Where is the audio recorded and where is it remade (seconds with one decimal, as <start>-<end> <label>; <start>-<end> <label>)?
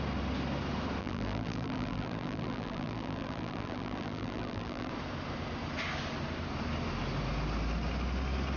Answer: 0.0-1.0 recorded; 1.0-4.9 remade; 4.9-8.6 recorded